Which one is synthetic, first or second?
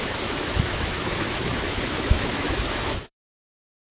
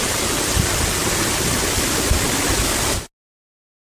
first